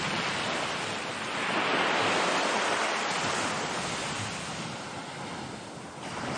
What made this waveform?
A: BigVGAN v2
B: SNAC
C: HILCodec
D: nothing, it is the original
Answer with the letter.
D